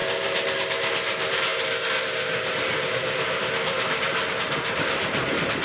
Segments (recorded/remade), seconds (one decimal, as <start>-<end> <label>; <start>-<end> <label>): 0.0-5.6 recorded